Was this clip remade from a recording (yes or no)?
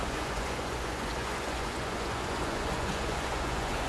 yes